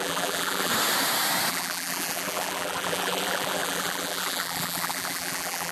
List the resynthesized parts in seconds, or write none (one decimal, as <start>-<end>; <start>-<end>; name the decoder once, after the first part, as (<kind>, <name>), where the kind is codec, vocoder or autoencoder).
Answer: 0.0-0.7 (vocoder, BigVGAN v2); 1.5-5.7